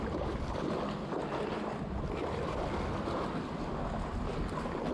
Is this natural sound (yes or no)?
yes